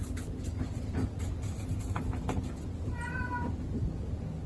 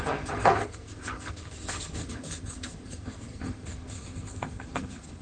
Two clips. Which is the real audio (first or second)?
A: first